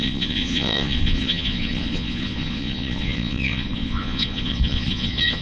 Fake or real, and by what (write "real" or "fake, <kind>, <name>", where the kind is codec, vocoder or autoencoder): fake, vocoder, Vocos